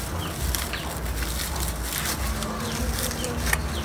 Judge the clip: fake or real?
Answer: real